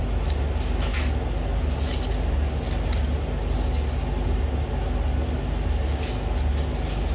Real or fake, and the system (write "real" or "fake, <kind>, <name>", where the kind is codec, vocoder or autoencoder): real